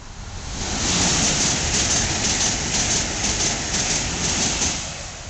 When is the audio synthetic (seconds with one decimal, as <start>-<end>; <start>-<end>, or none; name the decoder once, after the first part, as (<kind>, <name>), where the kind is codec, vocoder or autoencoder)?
none